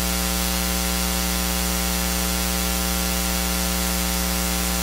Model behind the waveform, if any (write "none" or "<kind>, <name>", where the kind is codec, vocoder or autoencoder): none